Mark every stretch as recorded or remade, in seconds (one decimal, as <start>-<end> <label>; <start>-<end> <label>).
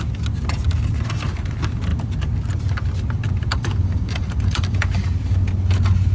0.0-3.5 recorded; 3.5-5.1 remade; 5.1-6.1 recorded